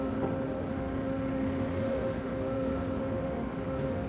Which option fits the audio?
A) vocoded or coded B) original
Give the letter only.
A